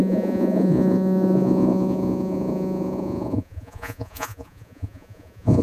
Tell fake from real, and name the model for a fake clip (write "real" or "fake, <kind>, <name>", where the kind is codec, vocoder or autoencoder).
fake, vocoder, Vocos